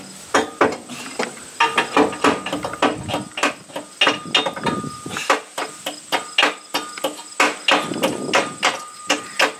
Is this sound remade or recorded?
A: recorded